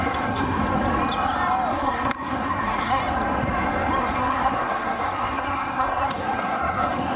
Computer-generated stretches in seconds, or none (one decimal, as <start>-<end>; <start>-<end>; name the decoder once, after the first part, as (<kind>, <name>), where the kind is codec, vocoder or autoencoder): 0.0-0.6 (codec, SNAC); 1.7-3.0; 4.0-7.2